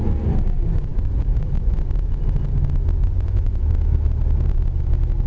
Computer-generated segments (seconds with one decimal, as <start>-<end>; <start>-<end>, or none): 0.9-1.8; 3.0-3.6